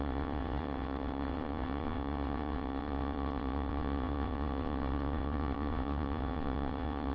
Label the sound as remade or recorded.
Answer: remade